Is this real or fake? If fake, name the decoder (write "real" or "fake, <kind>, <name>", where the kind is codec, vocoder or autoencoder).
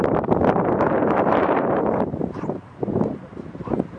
fake, vocoder, BigVGAN v2